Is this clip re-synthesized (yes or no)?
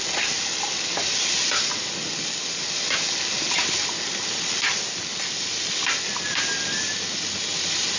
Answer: no